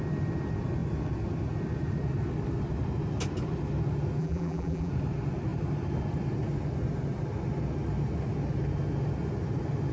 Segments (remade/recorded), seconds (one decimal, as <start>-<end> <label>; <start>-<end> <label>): 0.0-4.2 recorded; 4.2-4.9 remade; 4.9-9.9 recorded